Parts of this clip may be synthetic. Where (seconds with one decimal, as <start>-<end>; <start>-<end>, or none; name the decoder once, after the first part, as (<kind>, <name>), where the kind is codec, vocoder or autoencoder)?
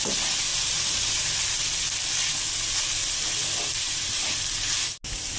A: 0.5-1.7 (vocoder, BigVGAN v2); 3.7-5.0